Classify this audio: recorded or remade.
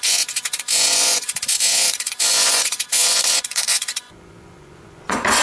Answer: remade